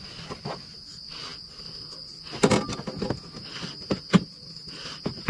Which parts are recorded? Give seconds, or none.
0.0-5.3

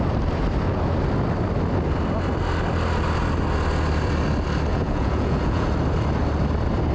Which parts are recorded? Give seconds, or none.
0.0-4.7; 5.7-6.9

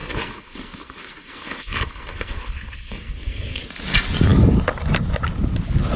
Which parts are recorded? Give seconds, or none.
3.6-6.0

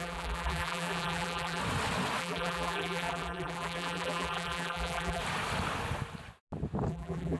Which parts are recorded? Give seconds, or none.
1.6-2.2; 5.2-6.9

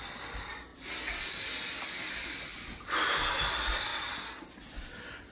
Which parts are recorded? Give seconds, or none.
0.0-2.5; 3.2-5.3

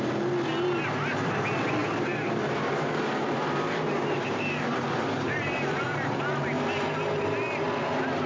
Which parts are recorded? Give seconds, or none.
0.0-1.8; 6.2-8.3

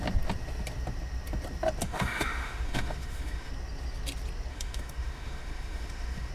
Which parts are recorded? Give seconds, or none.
0.0-1.8; 3.5-4.5